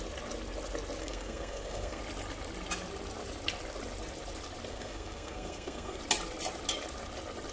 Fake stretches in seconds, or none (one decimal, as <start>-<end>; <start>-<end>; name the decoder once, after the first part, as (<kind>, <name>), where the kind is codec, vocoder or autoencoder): 1.0-2.0 (codec, SNAC); 4.7-6.0